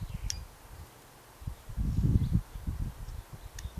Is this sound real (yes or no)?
yes